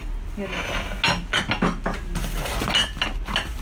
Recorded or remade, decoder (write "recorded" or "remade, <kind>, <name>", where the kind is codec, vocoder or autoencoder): recorded